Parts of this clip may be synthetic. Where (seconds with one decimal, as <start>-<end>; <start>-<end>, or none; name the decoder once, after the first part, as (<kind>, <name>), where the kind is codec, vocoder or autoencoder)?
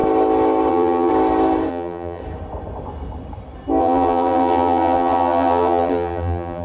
0.7-1.1 (vocoder, BigVGAN v2); 1.7-2.2; 3.8-6.6